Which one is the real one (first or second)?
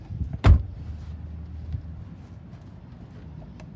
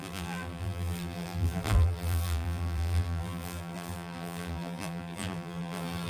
first